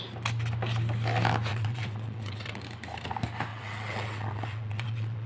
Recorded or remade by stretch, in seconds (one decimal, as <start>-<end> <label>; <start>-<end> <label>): 0.0-1.5 recorded; 1.5-2.6 remade; 2.6-3.5 recorded; 3.5-5.3 remade